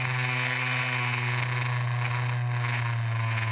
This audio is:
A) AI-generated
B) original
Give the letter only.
B